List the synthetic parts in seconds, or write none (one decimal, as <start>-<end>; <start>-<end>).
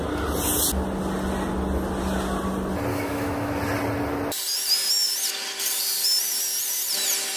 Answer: 2.9-3.5